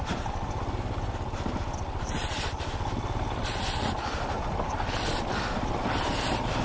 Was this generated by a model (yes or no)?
no